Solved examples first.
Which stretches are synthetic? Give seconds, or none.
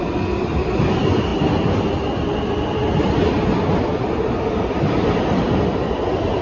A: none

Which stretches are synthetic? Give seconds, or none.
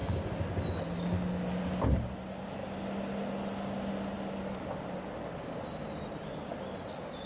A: none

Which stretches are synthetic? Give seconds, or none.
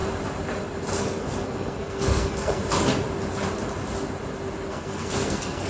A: 1.0-2.6 (codec, SNAC); 4.7-5.7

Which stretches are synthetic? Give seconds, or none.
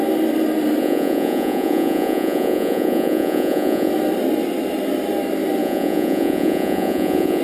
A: 0.8-3.9 (vocoder, Vocos); 5.6-7.4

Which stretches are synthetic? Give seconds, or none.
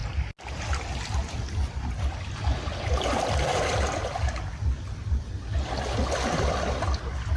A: none